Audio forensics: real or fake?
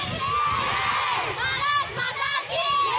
real